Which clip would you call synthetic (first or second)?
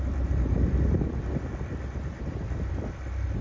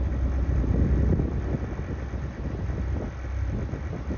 first